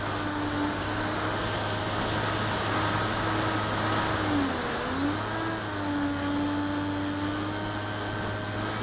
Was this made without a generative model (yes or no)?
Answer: yes